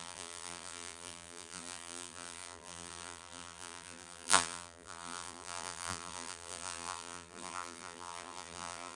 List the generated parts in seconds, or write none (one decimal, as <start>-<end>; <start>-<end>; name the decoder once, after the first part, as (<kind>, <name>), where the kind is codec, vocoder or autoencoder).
0.0-9.0 (vocoder, BigVGAN v2)